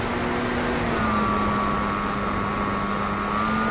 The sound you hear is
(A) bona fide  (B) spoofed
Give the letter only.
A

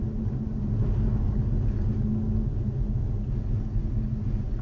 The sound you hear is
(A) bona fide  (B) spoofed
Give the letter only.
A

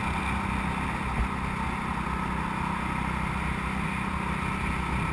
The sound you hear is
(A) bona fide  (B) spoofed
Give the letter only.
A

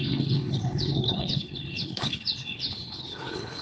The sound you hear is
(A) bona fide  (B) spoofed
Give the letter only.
B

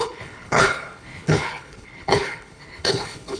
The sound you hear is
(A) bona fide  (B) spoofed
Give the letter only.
B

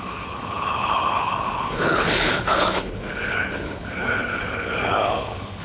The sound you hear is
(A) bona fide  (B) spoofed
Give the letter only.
B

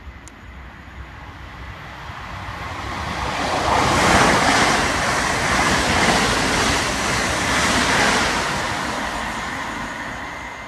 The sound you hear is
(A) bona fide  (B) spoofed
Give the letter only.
A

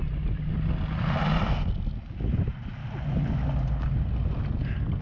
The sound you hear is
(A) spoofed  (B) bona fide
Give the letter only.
B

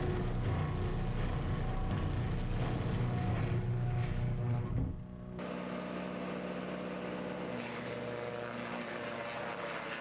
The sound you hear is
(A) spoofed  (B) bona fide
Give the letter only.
B